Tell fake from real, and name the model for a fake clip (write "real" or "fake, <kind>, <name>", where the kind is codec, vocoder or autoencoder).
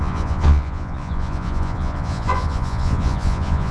fake, vocoder, Vocos